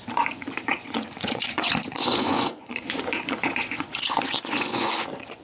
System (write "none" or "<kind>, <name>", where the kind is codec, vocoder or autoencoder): vocoder, Vocos